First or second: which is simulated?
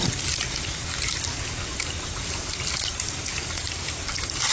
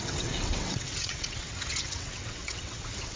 second